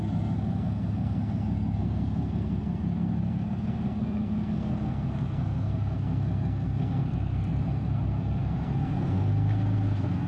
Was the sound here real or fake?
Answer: fake